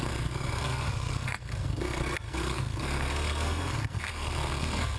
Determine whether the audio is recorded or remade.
remade